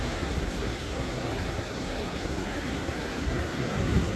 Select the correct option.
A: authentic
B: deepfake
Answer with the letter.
B